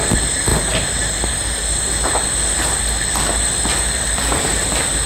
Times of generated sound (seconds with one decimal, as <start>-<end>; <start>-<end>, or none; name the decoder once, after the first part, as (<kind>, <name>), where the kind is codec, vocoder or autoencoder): none